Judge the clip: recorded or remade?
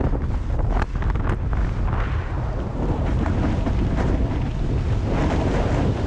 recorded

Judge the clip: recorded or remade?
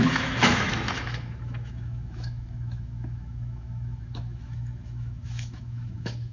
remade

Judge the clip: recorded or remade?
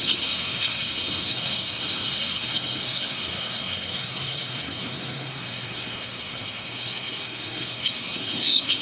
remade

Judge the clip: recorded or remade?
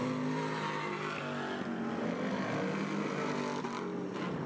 recorded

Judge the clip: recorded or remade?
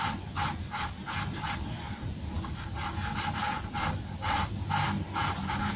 recorded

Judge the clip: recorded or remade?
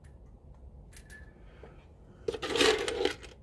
recorded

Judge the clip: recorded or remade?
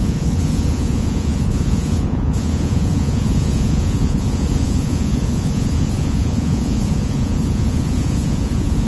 remade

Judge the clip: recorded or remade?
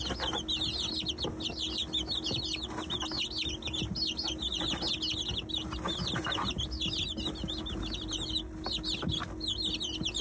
recorded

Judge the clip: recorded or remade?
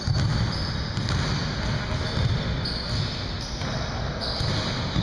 recorded